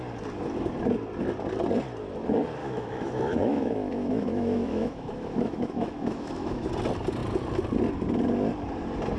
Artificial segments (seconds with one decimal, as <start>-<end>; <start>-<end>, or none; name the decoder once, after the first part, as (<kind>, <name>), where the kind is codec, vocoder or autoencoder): 2.6-6.7 (autoencoder, DAC-VAE)